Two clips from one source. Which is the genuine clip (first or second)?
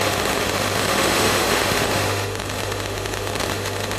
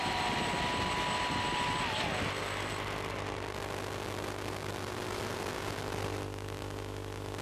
second